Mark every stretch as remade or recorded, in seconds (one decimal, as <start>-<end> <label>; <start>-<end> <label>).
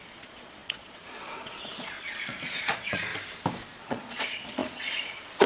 0.0-3.1 remade; 3.1-3.8 recorded; 3.8-5.5 remade